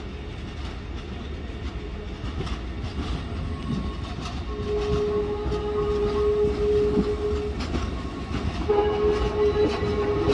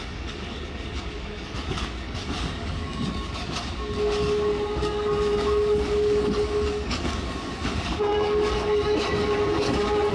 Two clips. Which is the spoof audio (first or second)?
second